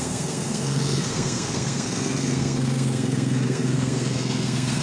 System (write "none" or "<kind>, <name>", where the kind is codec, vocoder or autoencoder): codec, SNAC